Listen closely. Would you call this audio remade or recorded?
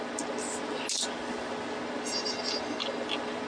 recorded